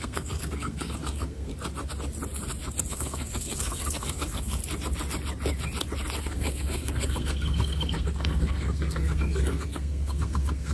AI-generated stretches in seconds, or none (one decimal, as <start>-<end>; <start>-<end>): 0.0-1.5; 2.9-4.6; 6.2-10.7